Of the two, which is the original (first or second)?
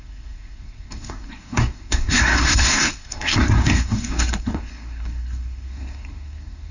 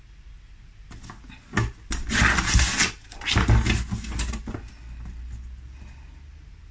second